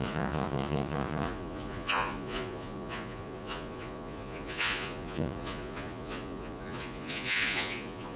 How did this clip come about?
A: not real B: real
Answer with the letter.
A